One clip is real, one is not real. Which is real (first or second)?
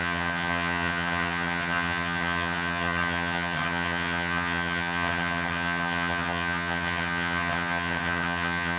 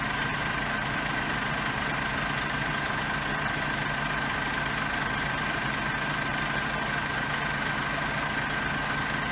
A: second